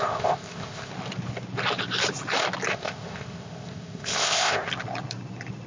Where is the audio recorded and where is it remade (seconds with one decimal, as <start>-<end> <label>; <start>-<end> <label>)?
0.0-0.9 remade; 0.9-2.7 recorded; 2.7-4.7 remade; 4.7-5.7 recorded